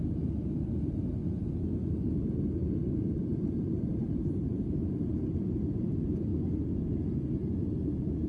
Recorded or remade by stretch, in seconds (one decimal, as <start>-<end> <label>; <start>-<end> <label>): 0.0-1.2 remade; 1.2-2.9 recorded; 2.9-6.3 remade; 6.3-7.7 recorded; 7.7-8.3 remade